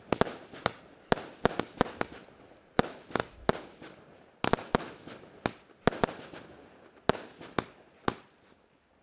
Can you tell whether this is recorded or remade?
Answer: recorded